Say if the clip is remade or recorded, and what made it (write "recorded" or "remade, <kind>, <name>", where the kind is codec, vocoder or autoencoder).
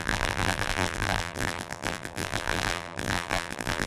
remade, vocoder, BigVGAN v2